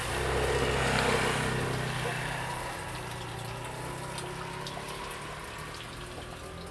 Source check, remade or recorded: recorded